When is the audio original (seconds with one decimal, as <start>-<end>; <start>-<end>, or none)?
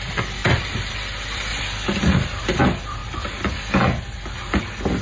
0.0-0.4; 1.1-1.5; 2.6-5.0